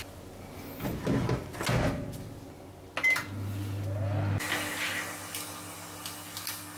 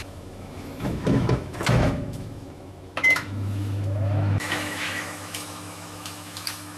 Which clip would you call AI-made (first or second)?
second